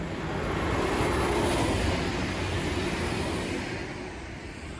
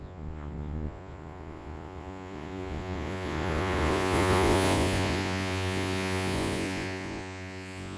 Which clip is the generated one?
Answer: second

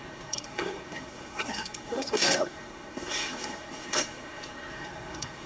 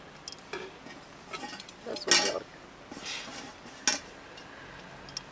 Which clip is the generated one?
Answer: first